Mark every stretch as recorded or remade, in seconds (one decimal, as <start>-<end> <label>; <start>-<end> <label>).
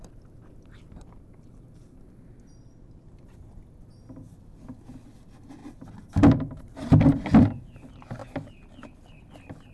0.0-9.7 recorded